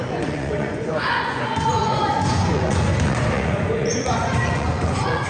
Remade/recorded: remade